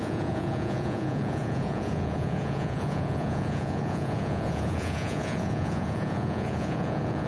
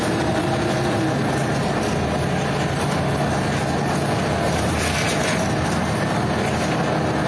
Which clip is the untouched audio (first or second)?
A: second